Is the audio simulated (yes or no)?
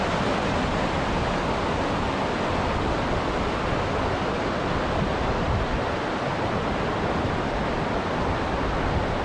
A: no